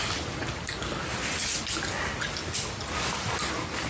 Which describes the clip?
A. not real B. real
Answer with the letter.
B